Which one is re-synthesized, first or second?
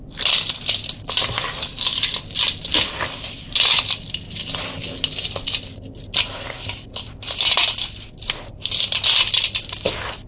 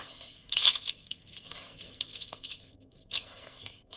second